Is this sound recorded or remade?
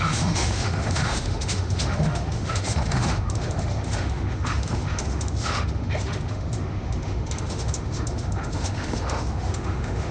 remade